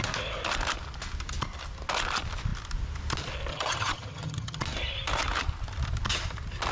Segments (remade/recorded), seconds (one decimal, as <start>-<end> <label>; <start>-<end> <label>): 0.0-3.5 recorded; 3.5-4.6 remade; 4.6-6.7 recorded